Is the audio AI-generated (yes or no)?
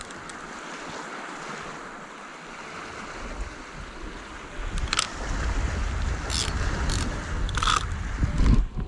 no